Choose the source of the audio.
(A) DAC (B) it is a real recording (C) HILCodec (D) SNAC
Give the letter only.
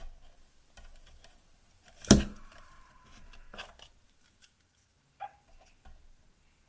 B